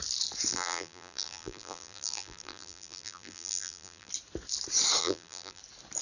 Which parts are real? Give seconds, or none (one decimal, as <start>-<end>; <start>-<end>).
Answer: 0.0-0.5; 4.1-5.0; 5.6-6.0